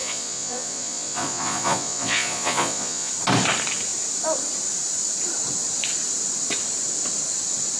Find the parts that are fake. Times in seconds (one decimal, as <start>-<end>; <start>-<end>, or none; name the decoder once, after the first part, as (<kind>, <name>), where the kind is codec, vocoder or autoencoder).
0.0-3.1 (vocoder, Vocos)